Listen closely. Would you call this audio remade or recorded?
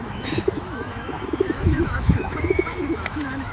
remade